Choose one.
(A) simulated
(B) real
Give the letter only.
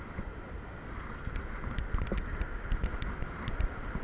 B